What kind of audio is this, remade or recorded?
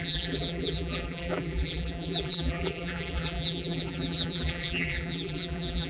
remade